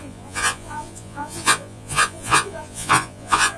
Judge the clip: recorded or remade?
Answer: remade